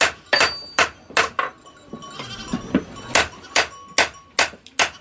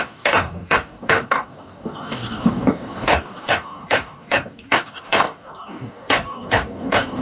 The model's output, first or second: second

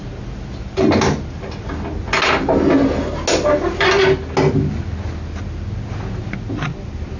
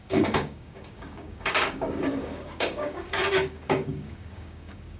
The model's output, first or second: second